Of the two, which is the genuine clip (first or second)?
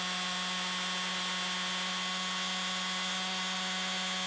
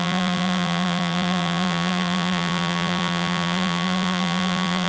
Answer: first